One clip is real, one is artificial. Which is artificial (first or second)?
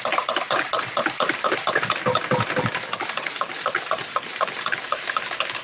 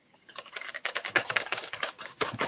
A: second